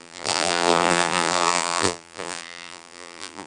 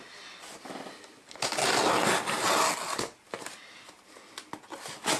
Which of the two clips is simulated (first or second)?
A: first